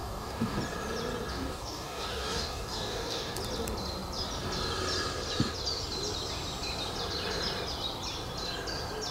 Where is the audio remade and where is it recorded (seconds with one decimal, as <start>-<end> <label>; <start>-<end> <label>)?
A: 0.0-0.6 remade; 0.6-1.3 recorded; 1.3-3.4 remade; 3.4-9.1 recorded